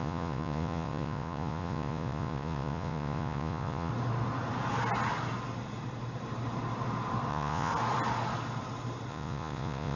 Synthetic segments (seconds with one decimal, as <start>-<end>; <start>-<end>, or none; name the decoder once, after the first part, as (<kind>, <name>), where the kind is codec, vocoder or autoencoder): 0.0-3.9 (vocoder, Vocos); 7.3-7.7; 9.1-10.0